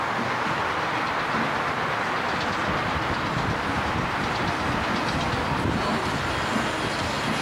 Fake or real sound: real